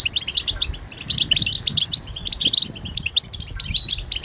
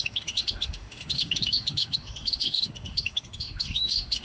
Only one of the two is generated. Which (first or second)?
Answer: second